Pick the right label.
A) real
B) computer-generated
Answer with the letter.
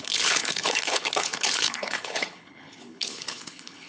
B